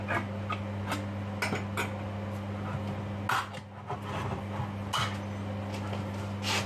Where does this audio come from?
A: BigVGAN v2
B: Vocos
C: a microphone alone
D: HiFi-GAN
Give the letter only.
C